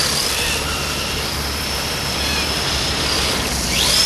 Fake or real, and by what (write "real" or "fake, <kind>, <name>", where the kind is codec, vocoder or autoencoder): real